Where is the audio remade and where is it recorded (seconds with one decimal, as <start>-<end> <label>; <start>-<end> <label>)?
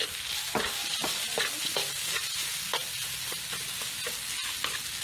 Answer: 0.0-5.0 recorded